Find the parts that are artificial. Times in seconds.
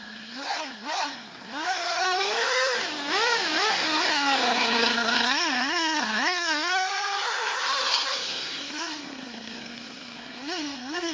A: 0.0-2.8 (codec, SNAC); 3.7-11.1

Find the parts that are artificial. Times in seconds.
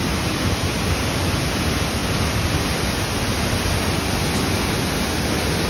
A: none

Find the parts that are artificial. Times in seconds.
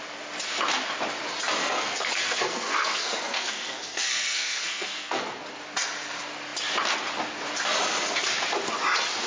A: 1.6-5.4 (codec, SNAC)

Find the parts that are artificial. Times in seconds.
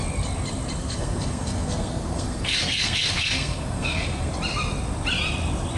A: 0.8-4.3 (codec, SNAC)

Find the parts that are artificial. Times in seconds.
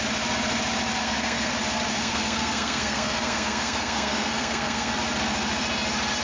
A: 1.0-1.5 (codec, SNAC); 1.9-4.9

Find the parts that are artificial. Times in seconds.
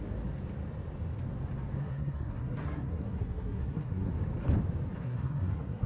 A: 1.8-4.1 (codec, SNAC); 5.0-5.9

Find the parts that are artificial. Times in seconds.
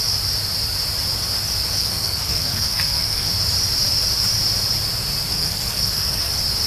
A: 1.8-3.3 (codec, SNAC); 5.3-6.3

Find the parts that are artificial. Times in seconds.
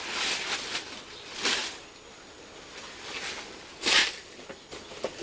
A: none